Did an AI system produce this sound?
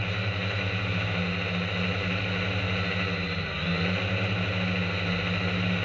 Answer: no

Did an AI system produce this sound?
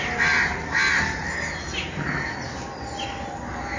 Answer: no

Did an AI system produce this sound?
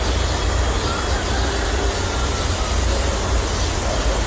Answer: no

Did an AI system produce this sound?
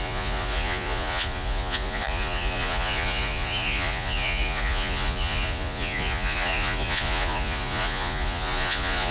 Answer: yes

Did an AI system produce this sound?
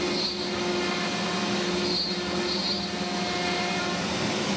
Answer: no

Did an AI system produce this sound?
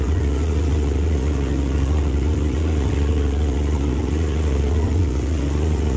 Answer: yes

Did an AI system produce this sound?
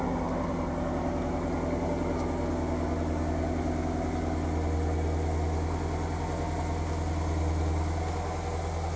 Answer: no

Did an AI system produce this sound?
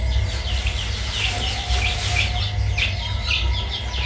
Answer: no